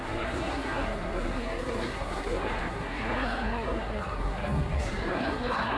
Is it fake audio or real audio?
fake